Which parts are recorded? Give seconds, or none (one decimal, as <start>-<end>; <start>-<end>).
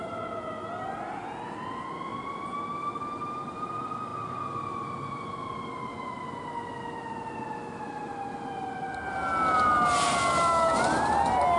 0.0-11.6